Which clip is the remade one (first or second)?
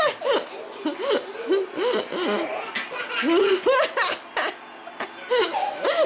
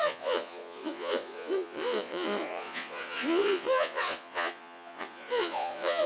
second